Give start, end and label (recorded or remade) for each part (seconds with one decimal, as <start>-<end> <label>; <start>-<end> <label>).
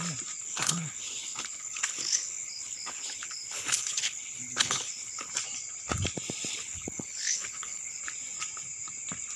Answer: 0.0-0.4 recorded; 0.4-5.3 remade; 5.3-6.5 recorded; 6.5-8.0 remade; 8.0-9.4 recorded